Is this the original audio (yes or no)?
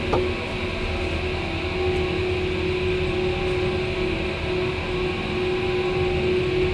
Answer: yes